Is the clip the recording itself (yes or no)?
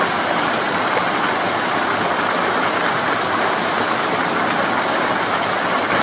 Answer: yes